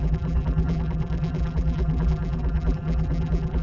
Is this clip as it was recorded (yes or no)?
no